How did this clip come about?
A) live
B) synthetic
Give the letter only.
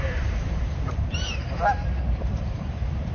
B